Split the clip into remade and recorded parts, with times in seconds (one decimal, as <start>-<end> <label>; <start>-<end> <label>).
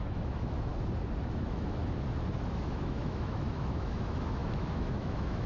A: 0.0-0.7 remade; 0.7-1.2 recorded; 1.2-1.8 remade; 1.8-2.4 recorded; 2.4-5.5 remade